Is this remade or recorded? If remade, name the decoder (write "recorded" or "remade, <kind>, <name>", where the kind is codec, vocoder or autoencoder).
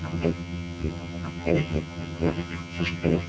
remade, vocoder, HiFi-GAN